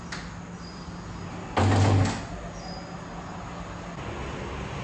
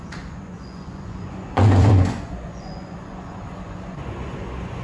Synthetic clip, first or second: second